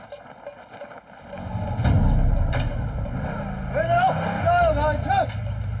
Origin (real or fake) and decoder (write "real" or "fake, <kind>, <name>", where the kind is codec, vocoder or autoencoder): real